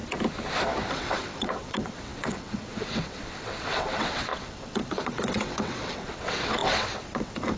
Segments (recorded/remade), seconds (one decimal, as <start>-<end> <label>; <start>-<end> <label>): 0.0-0.9 recorded; 0.9-7.6 remade